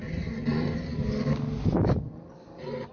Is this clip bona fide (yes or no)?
yes